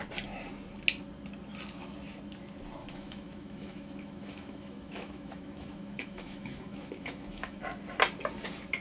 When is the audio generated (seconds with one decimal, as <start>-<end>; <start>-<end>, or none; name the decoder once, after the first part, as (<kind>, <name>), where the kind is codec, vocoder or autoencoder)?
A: 2.8-7.6 (autoencoder, DAC-VAE)